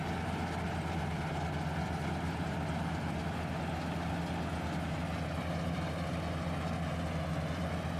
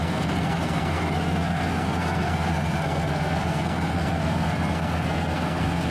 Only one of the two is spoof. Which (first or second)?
second